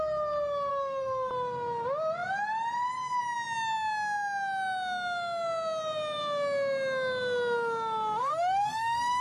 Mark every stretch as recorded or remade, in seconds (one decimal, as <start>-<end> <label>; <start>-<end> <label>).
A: 0.0-0.7 recorded; 0.7-1.3 remade; 1.3-8.2 recorded; 8.2-9.2 remade